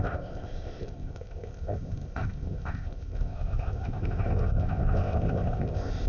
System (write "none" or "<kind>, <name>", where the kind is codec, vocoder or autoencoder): codec, ZipCodec